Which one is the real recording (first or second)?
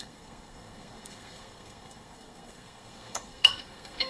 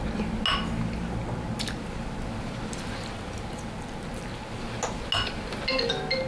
second